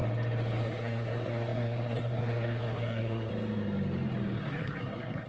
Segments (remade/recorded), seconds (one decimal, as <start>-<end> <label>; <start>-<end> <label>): 0.0-0.6 recorded; 0.6-3.3 remade; 3.3-4.5 recorded; 4.5-5.3 remade